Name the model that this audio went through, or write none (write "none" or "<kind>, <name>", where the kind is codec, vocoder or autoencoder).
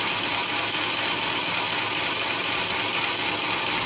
none